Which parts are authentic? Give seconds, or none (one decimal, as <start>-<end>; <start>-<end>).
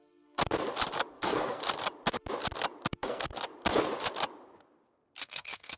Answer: 0.4-1.1; 1.6-2.9; 3.5-5.2